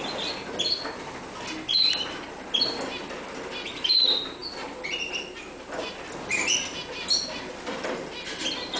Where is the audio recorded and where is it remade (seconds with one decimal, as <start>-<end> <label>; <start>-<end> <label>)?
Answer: 0.0-8.8 recorded